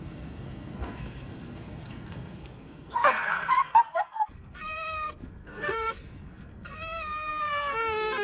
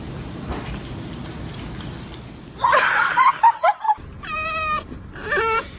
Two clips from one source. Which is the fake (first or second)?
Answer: first